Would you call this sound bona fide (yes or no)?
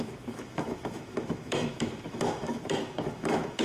no